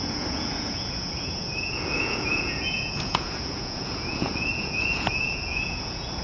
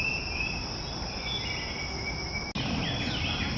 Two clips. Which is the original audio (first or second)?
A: second